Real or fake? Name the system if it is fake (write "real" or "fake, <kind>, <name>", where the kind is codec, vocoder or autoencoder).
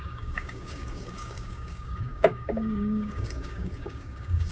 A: fake, codec, DAC